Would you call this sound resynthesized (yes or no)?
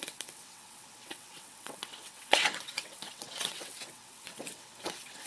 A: yes